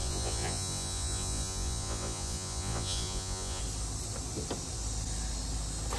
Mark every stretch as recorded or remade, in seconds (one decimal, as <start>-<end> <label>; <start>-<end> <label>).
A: 0.0-3.6 remade; 3.6-6.0 recorded

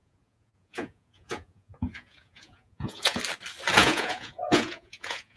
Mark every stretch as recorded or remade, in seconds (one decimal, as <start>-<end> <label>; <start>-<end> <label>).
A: 0.0-3.2 remade; 3.2-3.8 recorded; 3.8-5.4 remade

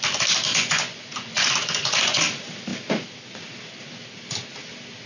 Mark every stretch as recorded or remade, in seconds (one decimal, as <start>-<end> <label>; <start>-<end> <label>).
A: 0.0-0.5 recorded; 0.5-2.2 remade; 2.2-5.1 recorded

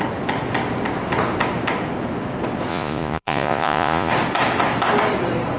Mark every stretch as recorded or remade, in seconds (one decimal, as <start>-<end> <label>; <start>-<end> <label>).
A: 0.0-2.7 recorded; 2.7-4.1 remade; 4.1-5.6 recorded

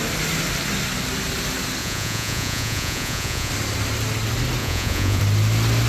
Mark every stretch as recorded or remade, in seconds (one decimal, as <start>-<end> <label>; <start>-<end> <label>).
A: 0.0-1.8 recorded; 1.8-3.5 remade; 3.5-4.6 recorded; 4.6-5.2 remade; 5.2-5.9 recorded

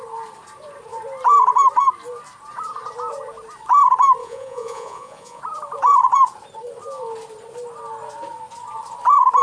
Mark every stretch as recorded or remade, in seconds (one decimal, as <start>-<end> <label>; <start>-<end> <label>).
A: 0.0-4.2 recorded; 4.2-5.4 remade; 5.4-9.4 recorded

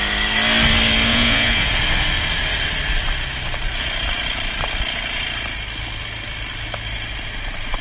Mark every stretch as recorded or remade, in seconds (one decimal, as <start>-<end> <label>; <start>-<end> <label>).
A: 0.0-1.1 recorded; 1.1-1.7 remade; 1.7-7.8 recorded

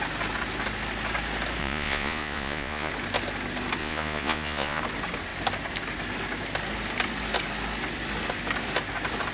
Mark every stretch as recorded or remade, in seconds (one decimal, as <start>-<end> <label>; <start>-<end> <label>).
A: 0.0-1.6 recorded; 1.6-2.9 remade; 2.9-3.8 recorded; 3.8-4.8 remade; 4.8-9.3 recorded